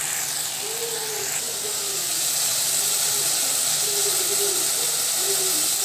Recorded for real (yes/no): no